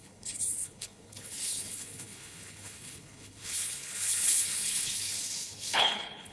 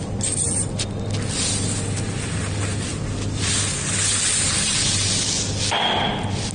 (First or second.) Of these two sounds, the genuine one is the second